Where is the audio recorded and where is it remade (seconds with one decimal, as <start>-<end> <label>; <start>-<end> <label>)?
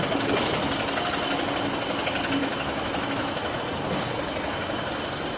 0.0-2.4 recorded; 2.4-3.6 remade; 3.6-5.4 recorded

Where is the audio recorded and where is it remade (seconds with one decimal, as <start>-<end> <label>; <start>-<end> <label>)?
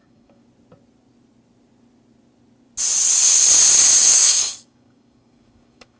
0.0-0.4 remade; 0.4-4.0 recorded; 4.0-6.0 remade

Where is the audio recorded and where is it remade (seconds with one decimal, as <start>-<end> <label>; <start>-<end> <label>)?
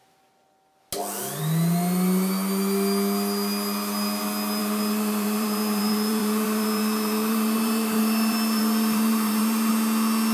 0.0-4.6 recorded; 4.6-9.7 remade; 9.7-10.3 recorded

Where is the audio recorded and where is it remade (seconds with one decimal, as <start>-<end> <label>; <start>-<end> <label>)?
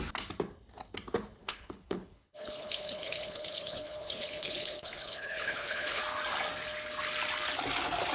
0.0-1.4 recorded; 1.4-6.0 remade; 6.0-8.1 recorded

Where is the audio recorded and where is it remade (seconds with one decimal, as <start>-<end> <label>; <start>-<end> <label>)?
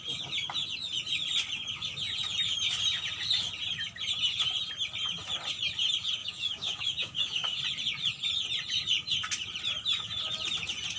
0.0-6.2 recorded; 6.2-7.6 remade; 7.6-11.0 recorded